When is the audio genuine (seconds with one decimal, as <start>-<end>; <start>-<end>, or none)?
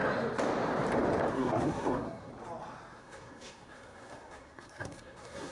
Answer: 0.0-1.3; 2.3-3.0